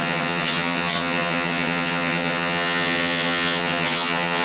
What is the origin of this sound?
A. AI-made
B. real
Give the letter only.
A